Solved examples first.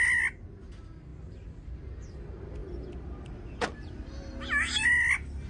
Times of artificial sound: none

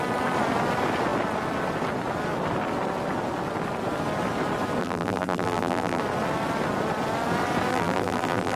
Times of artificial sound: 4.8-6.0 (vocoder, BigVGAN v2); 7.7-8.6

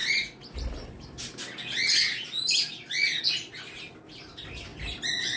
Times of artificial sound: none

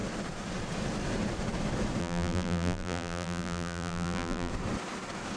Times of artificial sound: 2.0-4.5 (vocoder, BigVGAN v2)

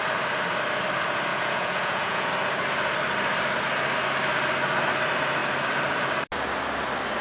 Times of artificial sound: 1.3-2.3 (vocoder, Vocos)

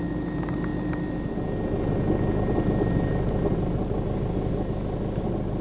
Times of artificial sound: none

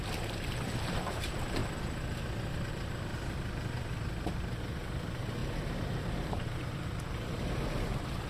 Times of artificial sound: 0.0-1.6 (vocoder, BigVGAN v2); 2.7-3.1; 4.4-5.4; 6.0-8.3

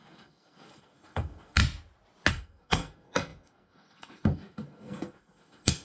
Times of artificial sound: 0.0-1.6 (codec, SNAC); 2.3-5.8